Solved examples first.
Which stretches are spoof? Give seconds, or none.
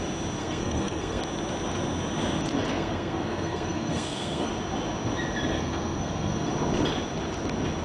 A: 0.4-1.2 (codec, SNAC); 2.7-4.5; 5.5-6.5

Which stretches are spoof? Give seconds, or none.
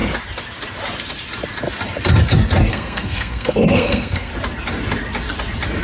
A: 2.7-4.3 (codec, SNAC)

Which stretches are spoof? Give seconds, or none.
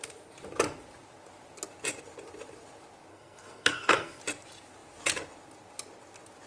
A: 3.1-4.2 (codec, SNAC)